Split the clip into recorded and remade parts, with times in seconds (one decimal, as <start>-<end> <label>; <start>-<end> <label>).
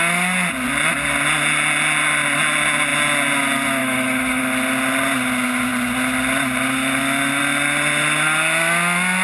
0.0-3.8 recorded; 3.8-4.4 remade; 4.4-9.2 recorded